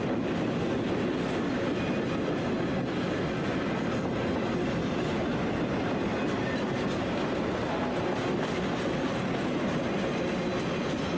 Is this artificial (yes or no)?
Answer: no